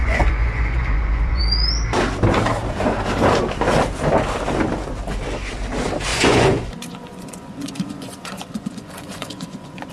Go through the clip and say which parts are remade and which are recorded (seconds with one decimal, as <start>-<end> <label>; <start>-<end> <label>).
0.0-1.4 remade; 1.4-6.1 recorded; 6.1-9.9 remade

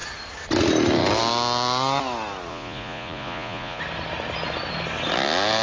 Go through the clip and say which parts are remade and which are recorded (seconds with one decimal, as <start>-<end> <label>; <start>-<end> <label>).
0.0-2.5 recorded; 2.5-3.8 remade; 3.8-5.6 recorded

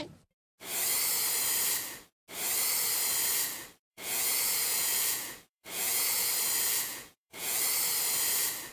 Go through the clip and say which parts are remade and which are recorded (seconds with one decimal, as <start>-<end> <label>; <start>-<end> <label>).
0.0-3.9 recorded; 3.9-6.3 remade; 6.3-6.7 recorded; 6.7-7.6 remade; 7.6-8.7 recorded